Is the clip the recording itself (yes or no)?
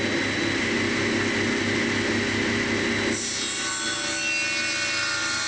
yes